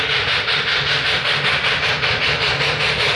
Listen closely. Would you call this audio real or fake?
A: real